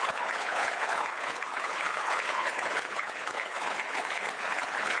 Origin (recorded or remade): remade